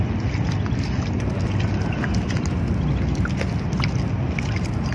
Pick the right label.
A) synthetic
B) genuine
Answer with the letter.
B